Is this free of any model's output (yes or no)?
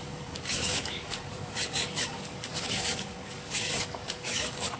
no